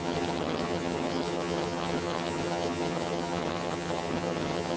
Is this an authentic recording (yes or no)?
no